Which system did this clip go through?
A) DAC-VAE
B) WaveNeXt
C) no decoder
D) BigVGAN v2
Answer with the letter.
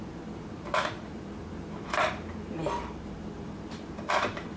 D